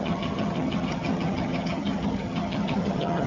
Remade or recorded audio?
remade